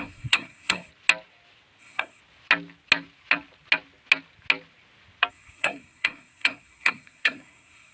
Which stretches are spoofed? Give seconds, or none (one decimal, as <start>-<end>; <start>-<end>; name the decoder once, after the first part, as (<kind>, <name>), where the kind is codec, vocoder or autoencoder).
0.0-0.9 (codec, SNAC); 1.8-2.2; 5.3-7.9